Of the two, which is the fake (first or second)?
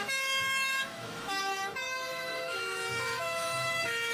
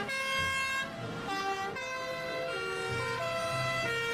first